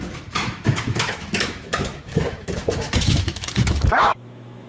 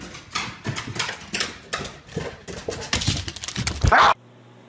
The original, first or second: second